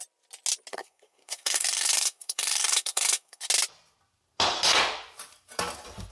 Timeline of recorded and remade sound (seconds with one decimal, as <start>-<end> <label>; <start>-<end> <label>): 0.0-0.7 recorded; 0.7-3.5 remade; 3.5-6.1 recorded